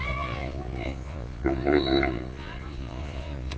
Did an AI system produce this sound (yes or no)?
yes